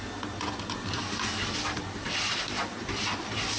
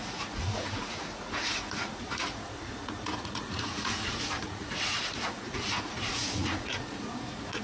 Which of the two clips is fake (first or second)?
second